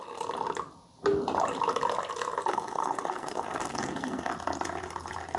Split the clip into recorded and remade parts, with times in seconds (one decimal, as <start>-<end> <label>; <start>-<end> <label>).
0.0-2.5 recorded; 2.5-4.3 remade; 4.3-5.4 recorded